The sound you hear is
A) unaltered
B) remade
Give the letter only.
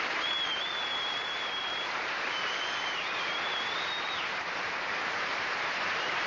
B